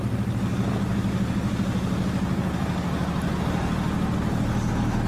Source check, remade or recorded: recorded